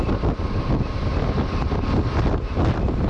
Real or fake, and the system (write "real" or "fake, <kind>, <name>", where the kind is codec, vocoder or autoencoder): real